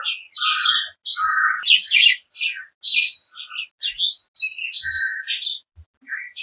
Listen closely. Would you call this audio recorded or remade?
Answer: recorded